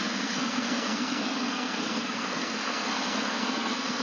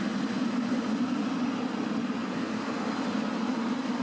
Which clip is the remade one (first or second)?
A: first